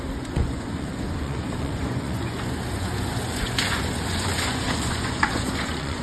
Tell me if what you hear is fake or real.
fake